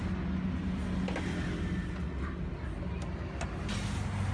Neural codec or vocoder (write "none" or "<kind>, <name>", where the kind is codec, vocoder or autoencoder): none